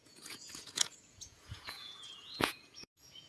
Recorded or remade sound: remade